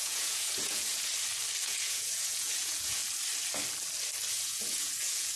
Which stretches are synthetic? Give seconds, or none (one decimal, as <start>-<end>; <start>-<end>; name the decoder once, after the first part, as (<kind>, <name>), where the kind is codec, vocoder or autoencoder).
0.0-1.1 (vocoder, Vocos); 1.6-3.0; 4.3-5.4